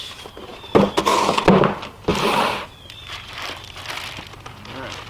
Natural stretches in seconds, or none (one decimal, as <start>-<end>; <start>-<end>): 0.0-5.1